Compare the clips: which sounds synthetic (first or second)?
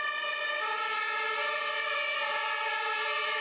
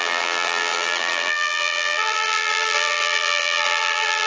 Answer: second